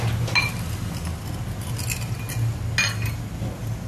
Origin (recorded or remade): recorded